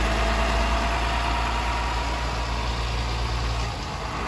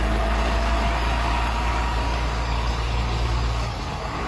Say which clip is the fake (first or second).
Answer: second